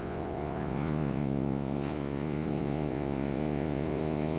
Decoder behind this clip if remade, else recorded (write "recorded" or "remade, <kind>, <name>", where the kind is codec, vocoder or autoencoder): remade, vocoder, Vocos